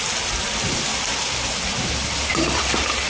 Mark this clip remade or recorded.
recorded